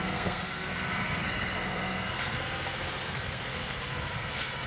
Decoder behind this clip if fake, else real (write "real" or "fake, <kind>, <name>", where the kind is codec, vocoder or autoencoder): fake, codec, SNAC